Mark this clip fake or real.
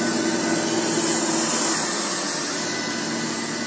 real